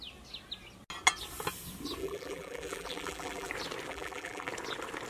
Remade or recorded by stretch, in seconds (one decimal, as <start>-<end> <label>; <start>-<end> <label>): 0.0-2.0 recorded; 2.0-3.5 remade; 3.5-3.9 recorded; 3.9-4.5 remade; 4.5-5.1 recorded